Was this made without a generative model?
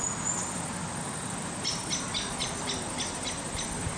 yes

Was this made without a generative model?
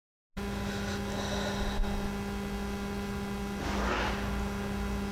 yes